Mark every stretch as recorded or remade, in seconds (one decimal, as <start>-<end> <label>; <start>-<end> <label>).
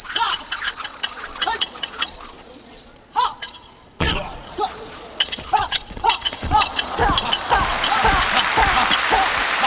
0.0-7.0 remade; 7.0-9.7 recorded